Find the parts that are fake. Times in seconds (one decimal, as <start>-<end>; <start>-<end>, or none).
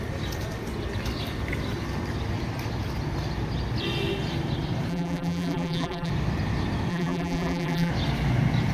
4.9-6.1; 6.9-7.9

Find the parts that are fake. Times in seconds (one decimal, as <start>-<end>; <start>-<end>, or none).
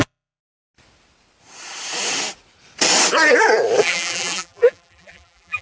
0.0-0.4; 3.8-5.6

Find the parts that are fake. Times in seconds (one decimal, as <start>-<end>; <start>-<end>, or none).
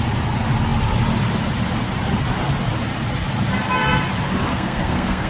4.5-5.3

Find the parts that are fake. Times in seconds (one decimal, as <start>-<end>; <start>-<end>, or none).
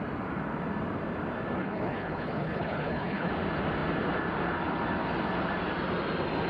1.6-3.3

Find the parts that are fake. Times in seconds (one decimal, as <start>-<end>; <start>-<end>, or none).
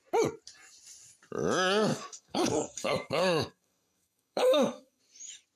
1.9-5.0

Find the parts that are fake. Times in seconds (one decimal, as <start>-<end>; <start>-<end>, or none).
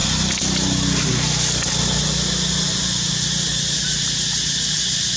none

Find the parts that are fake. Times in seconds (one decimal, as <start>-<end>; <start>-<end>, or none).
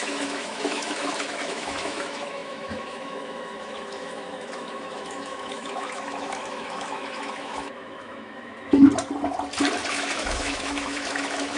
0.0-8.9; 9.9-11.6